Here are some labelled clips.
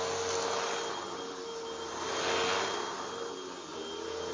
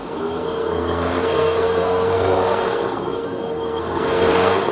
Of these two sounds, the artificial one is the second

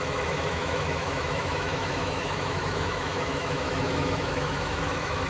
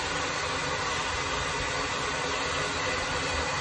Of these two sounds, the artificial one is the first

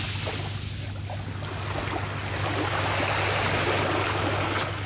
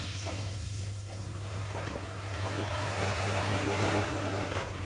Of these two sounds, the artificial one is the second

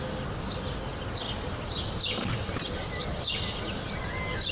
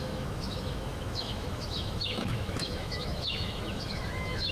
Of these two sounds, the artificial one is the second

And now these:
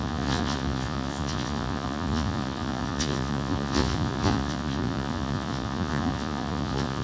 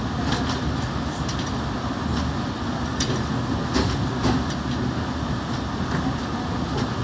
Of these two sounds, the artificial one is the first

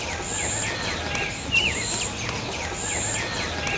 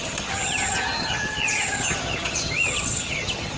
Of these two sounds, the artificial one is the second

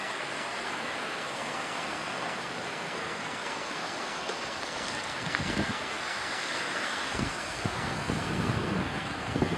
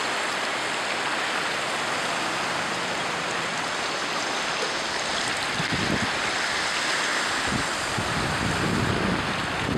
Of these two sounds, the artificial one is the first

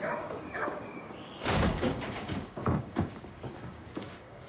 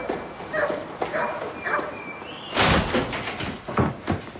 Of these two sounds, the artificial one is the first